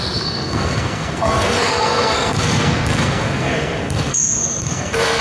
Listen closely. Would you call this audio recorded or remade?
remade